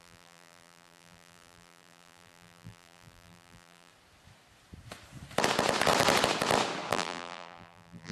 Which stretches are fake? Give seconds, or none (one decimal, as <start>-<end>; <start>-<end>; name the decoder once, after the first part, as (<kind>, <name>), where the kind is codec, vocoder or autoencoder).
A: 0.0-3.9 (vocoder, BigVGAN v2); 6.9-8.1